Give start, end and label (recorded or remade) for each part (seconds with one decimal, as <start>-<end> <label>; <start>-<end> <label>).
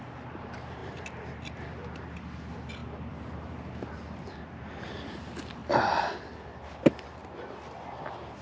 0.0-8.4 recorded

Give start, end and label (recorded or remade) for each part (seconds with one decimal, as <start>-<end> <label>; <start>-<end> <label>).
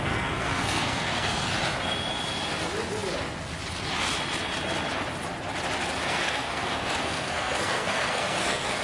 0.0-1.5 remade; 1.5-6.0 recorded; 6.0-8.8 remade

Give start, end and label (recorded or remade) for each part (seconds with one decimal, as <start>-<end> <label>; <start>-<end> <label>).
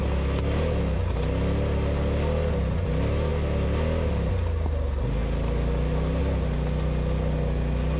0.0-8.0 recorded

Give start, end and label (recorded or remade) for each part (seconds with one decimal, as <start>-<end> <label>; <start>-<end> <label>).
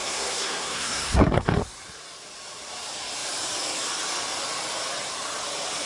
0.0-1.6 remade; 1.6-5.9 recorded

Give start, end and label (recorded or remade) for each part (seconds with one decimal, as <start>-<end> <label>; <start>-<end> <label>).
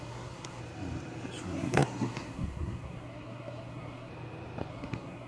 0.0-0.6 remade; 0.6-1.4 recorded; 1.4-4.1 remade; 4.1-4.7 recorded; 4.7-5.3 remade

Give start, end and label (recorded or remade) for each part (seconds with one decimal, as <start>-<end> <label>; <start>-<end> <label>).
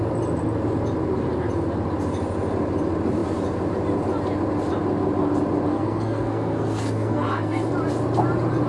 0.0-5.7 recorded; 5.7-7.7 remade; 7.7-8.7 recorded